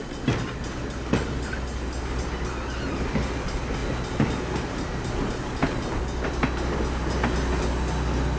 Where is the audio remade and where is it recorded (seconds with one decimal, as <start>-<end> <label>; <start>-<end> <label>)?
0.0-8.4 recorded